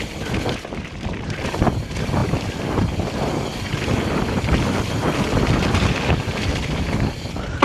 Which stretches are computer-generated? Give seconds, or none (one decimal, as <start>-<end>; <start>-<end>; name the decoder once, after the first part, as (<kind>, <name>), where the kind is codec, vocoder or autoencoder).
none